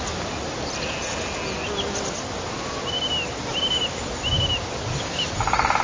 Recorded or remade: recorded